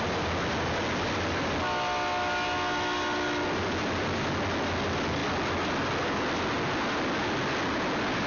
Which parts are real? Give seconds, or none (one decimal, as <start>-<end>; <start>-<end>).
0.0-8.3